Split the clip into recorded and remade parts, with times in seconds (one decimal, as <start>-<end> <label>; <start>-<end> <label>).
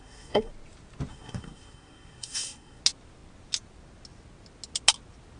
0.0-0.5 remade; 0.5-1.1 recorded; 1.1-2.8 remade; 2.8-5.4 recorded